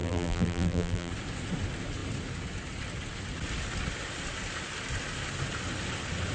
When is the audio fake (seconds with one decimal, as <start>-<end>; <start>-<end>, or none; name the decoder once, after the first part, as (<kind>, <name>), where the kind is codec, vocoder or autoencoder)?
0.0-1.1 (vocoder, BigVGAN v2)